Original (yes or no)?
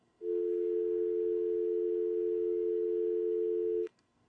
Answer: no